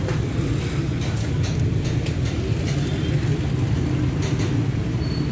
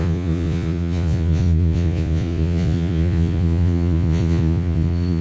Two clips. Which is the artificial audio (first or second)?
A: second